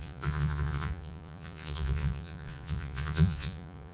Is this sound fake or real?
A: fake